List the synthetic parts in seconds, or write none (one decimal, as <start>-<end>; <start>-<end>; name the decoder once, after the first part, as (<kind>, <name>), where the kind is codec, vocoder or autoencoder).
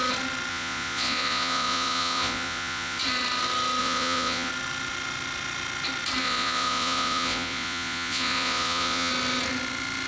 0.5-3.0 (vocoder, Vocos); 3.8-4.5; 6.2-9.1